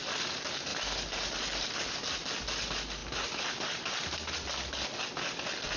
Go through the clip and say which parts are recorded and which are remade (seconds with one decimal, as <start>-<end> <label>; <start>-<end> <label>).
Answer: 0.0-0.7 recorded; 0.7-1.8 remade; 1.8-3.0 recorded; 3.0-4.3 remade; 4.3-5.8 recorded